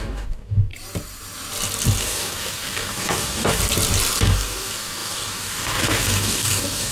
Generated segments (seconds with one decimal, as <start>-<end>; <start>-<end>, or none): 0.0-0.7; 2.0-3.6; 4.2-6.9

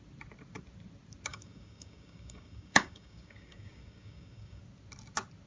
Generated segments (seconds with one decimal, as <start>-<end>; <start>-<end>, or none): 1.3-4.6

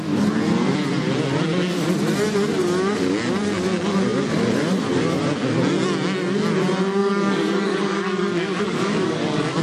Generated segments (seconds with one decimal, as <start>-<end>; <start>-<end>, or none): 7.0-9.6

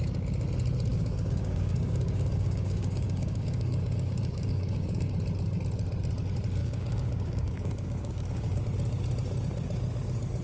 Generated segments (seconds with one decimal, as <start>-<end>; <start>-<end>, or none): 0.9-5.1; 6.6-8.6

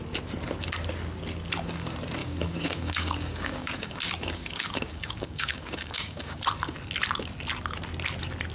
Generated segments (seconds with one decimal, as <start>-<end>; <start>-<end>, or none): 2.2-6.4

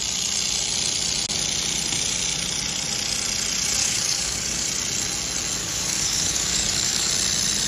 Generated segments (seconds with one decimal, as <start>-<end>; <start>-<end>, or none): 3.8-4.7; 5.6-7.1

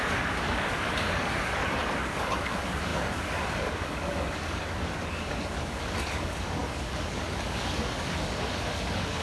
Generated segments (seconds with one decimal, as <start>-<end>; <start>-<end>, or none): 0.0-9.2